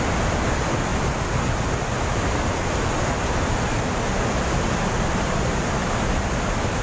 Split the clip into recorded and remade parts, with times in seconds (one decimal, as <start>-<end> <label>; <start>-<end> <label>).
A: 0.0-6.8 recorded